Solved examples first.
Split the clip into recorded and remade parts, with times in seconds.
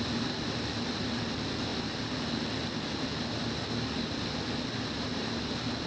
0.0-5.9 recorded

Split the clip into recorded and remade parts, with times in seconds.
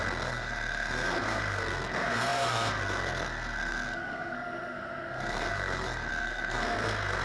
0.0-7.2 remade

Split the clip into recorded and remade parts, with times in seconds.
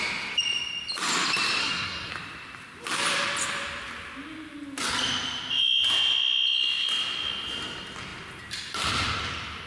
0.0-1.6 recorded; 1.6-2.1 remade; 2.1-9.7 recorded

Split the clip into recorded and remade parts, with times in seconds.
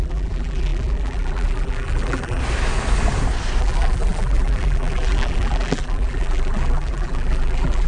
0.0-2.4 remade; 2.4-3.6 recorded; 3.6-7.9 remade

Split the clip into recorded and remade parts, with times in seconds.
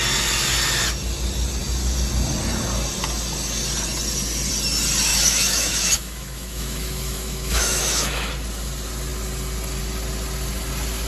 0.0-5.1 recorded; 5.1-8.3 remade; 8.3-11.1 recorded